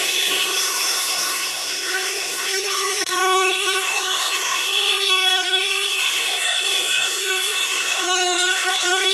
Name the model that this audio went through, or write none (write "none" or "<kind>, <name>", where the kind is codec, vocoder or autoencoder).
codec, SNAC